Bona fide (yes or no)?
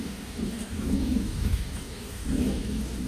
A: no